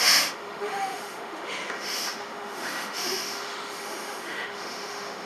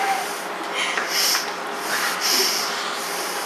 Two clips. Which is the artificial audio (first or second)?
first